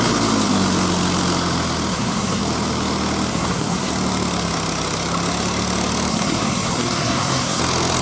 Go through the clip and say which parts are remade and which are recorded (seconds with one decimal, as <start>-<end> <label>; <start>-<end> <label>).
0.0-1.9 recorded; 1.9-2.4 remade; 2.4-3.3 recorded; 3.3-3.9 remade; 3.9-6.1 recorded; 6.1-7.6 remade; 7.6-8.0 recorded